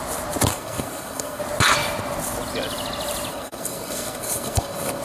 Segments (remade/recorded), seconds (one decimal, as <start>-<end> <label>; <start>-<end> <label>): 0.0-0.5 recorded; 0.5-1.4 remade; 1.4-3.3 recorded; 3.3-5.0 remade